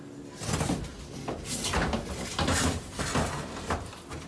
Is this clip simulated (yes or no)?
no